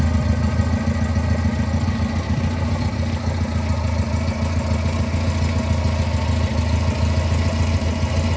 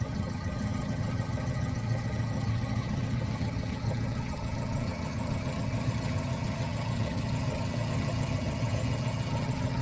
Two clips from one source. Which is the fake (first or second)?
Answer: second